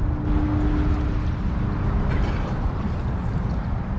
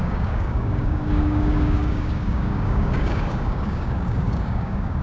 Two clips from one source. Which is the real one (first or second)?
first